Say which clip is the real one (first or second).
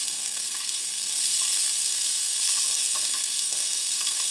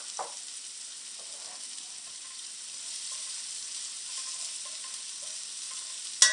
second